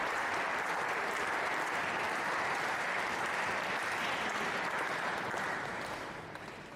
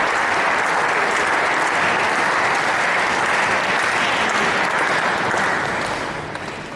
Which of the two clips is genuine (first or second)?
second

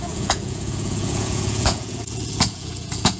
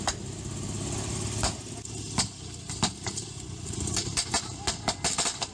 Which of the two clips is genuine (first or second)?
second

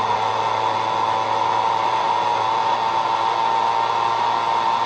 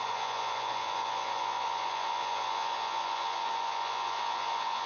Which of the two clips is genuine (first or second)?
first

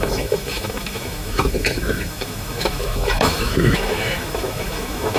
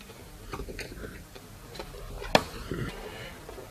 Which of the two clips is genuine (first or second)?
second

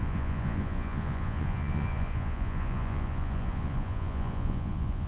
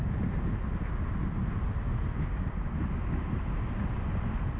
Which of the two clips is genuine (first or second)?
second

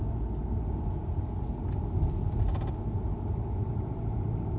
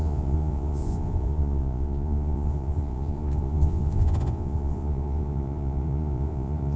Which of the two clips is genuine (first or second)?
first